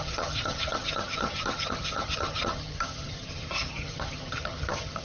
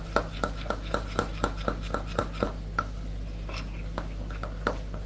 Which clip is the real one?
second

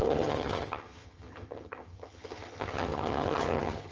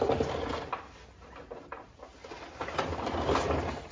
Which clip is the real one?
second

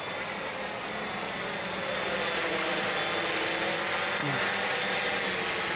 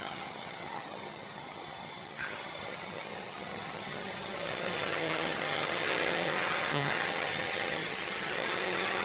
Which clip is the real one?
first